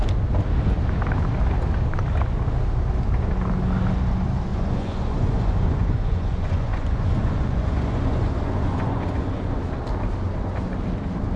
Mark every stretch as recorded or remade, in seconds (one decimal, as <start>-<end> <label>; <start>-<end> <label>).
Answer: 0.0-4.5 recorded; 4.5-9.6 remade; 9.6-11.4 recorded